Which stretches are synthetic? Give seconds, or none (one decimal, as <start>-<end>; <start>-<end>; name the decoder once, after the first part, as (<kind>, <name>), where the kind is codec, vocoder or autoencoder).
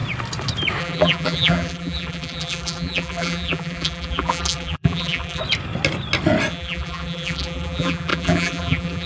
0.8-5.4 (vocoder, BigVGAN v2); 6.5-9.1